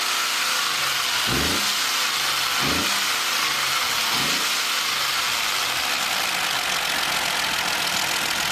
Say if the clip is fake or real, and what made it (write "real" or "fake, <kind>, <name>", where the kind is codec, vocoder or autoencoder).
real